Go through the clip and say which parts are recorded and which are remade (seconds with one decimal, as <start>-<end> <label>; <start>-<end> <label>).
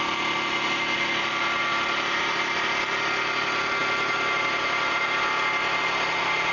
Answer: 0.0-6.5 recorded